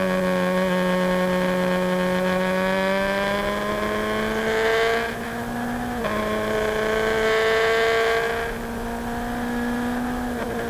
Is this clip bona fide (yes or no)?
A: yes